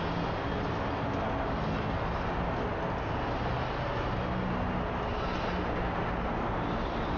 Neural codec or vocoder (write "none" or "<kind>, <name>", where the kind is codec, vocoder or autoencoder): none